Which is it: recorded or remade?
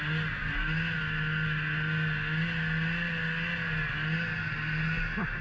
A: recorded